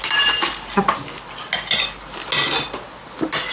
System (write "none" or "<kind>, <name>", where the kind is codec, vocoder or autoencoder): none